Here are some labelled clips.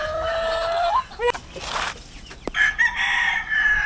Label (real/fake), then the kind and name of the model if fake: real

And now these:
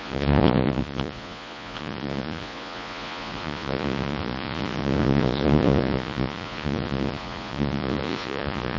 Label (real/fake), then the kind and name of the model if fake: fake, vocoder, Vocos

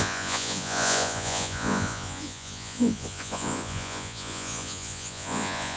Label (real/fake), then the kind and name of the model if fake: fake, vocoder, Vocos